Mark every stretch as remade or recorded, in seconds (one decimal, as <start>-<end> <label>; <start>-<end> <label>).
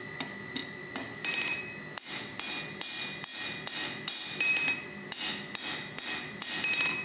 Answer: 0.0-7.0 recorded